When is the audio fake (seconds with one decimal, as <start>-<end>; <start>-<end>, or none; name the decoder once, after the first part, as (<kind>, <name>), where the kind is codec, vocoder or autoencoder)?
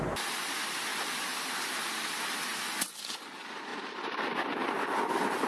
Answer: none